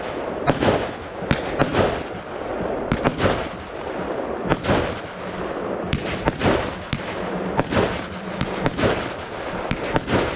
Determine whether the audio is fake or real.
real